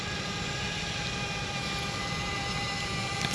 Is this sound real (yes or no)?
yes